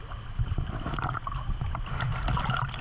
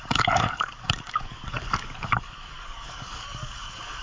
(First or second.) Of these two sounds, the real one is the first